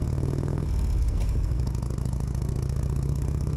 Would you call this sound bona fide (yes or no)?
no